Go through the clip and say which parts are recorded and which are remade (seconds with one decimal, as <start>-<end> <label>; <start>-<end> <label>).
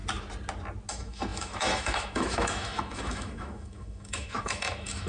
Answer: 0.0-0.9 recorded; 0.9-5.1 remade